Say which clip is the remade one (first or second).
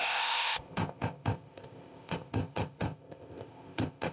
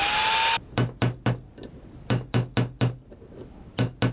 first